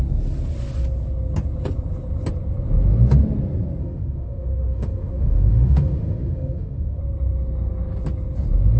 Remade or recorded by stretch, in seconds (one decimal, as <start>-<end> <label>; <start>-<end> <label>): 0.0-3.8 recorded; 3.8-7.0 remade; 7.0-8.8 recorded